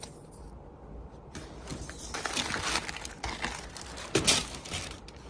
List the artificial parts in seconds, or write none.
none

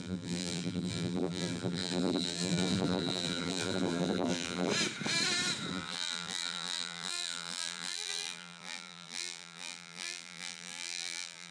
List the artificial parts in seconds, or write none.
0.0-4.7 (vocoder, BigVGAN v2); 5.7-11.5

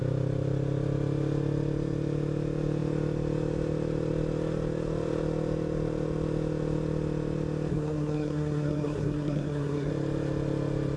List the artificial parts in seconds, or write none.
7.7-9.9 (codec, SNAC)

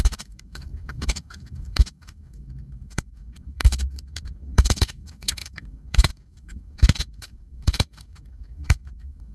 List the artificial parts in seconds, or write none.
0.0-9.3 (codec, DAC)

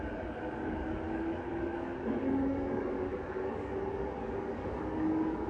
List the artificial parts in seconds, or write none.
0.0-5.5 (codec, DAC)

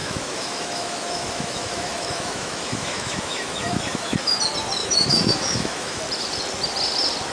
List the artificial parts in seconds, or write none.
0.0-4.2 (autoencoder, DAC-VAE); 4.8-6.0